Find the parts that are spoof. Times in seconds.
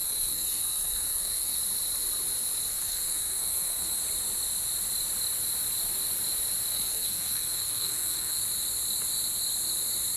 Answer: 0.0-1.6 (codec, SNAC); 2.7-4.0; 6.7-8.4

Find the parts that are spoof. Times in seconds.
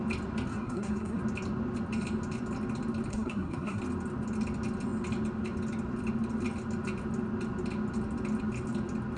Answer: 0.5-1.2 (codec, SNAC); 3.1-3.8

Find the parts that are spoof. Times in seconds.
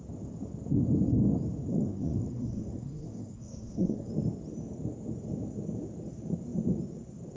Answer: 1.7-4.1 (codec, SNAC)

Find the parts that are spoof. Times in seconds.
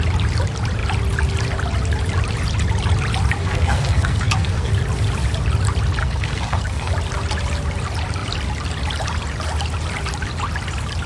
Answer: 3.4-4.7 (codec, SNAC); 6.0-6.9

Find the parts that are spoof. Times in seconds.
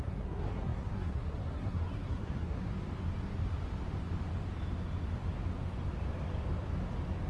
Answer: 0.0-2.7 (codec, SNAC)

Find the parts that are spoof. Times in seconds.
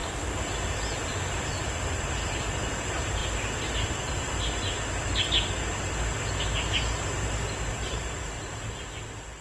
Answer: none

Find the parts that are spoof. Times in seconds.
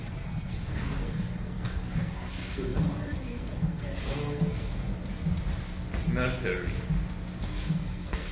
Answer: 0.0-4.9 (codec, SNAC); 7.4-8.3